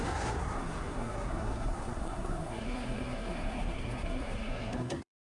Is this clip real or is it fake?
fake